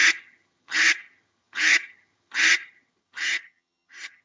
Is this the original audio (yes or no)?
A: no